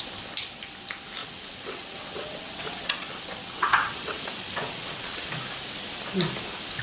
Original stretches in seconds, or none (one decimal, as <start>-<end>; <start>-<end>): 0.0-1.2; 5.3-6.8